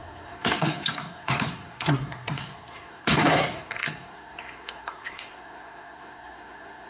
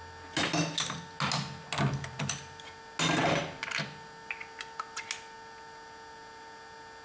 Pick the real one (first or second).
second